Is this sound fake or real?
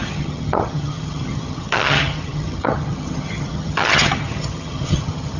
fake